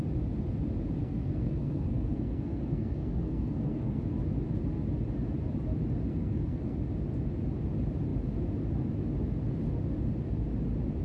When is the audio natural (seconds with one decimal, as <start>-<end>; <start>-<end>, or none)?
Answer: 0.0-1.0; 4.0-6.1; 6.8-11.0